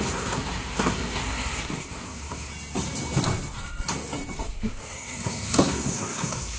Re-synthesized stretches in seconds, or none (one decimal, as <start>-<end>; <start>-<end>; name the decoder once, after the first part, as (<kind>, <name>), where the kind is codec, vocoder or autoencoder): 0.0-2.5 (codec, SNAC); 4.5-6.6